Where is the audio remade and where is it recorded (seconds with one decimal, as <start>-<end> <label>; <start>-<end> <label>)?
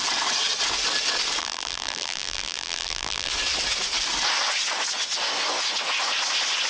0.0-1.4 recorded; 1.4-3.3 remade; 3.3-6.7 recorded